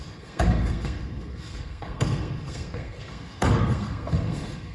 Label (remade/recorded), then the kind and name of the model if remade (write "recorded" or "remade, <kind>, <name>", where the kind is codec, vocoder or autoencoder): remade, codec, SNAC